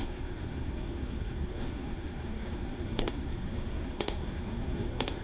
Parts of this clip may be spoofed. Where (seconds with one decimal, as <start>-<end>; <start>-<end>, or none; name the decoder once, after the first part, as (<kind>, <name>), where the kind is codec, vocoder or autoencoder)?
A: 0.0-5.2 (codec, SNAC)